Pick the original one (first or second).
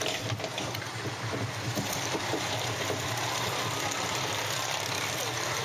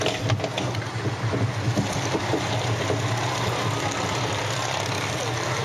second